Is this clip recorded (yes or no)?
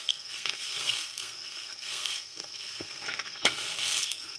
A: no